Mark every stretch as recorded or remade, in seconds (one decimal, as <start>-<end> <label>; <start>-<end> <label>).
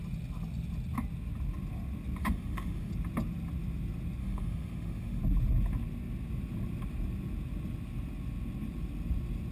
0.0-2.2 recorded; 2.2-2.9 remade; 2.9-4.2 recorded; 4.2-5.2 remade; 5.2-9.5 recorded